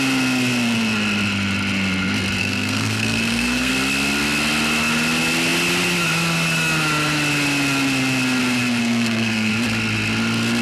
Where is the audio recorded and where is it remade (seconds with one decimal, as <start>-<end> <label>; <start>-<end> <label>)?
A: 0.0-2.4 recorded; 2.4-3.7 remade; 3.7-8.8 recorded; 8.8-9.5 remade; 9.5-10.6 recorded